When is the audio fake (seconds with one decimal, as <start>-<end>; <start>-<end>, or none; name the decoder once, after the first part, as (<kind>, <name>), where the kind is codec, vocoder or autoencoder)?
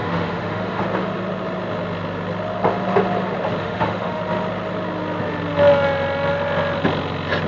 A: 0.0-0.8 (autoencoder, DAC-VAE); 3.6-4.2